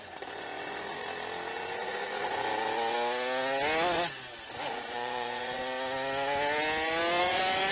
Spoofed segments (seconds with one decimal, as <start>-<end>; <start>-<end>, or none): 0.0-1.0; 1.7-2.5; 4.5-5.6; 7.2-7.7